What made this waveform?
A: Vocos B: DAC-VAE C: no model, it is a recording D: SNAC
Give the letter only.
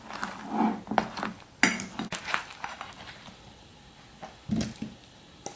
C